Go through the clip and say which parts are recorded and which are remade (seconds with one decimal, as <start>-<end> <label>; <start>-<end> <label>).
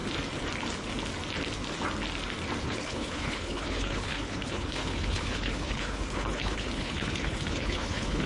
0.0-2.6 recorded; 2.6-8.3 remade